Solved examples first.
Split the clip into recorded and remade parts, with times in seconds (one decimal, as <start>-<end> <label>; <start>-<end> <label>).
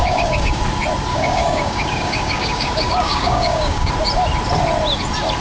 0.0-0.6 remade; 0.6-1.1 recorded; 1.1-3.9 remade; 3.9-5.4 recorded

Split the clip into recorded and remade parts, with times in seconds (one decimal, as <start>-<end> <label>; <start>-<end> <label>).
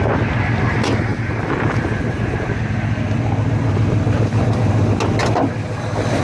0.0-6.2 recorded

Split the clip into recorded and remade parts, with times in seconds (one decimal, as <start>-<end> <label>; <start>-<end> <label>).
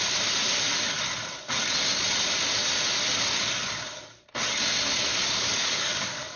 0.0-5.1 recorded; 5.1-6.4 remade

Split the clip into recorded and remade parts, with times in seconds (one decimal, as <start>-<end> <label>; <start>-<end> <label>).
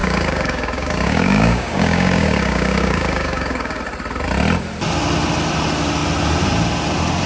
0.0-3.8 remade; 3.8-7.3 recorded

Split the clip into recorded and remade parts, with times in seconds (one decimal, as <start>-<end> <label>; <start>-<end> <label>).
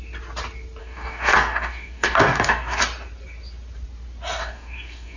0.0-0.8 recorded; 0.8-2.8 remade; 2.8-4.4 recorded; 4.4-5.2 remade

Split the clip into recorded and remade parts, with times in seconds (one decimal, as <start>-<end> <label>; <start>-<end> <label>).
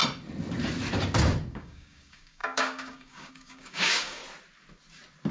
0.0-1.5 recorded; 1.5-4.2 remade; 4.2-5.3 recorded